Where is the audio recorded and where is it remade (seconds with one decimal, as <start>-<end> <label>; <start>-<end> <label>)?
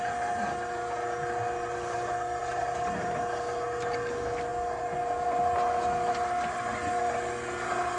0.0-8.0 recorded